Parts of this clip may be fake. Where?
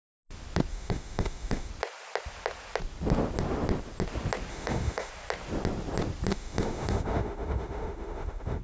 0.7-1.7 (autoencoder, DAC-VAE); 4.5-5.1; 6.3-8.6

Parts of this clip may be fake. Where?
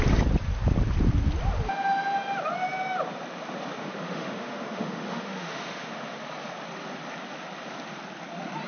3.8-5.9 (autoencoder, DAC-VAE)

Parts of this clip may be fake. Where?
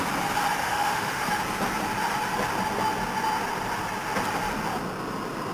0.6-1.3 (autoencoder, DAC-VAE)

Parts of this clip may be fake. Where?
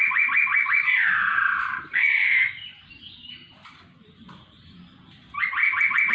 none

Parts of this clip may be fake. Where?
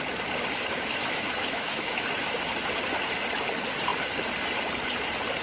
1.0-2.5 (autoencoder, DAC-VAE)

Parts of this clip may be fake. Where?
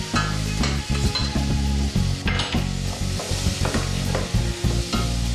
none